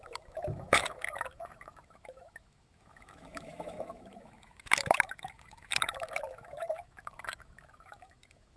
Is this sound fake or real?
fake